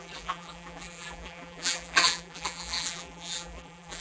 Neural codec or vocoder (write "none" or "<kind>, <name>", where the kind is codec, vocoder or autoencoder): vocoder, BigVGAN v2